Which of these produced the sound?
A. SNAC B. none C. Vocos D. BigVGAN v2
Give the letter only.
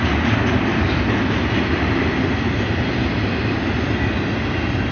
B